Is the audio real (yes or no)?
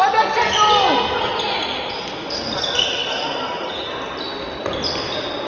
yes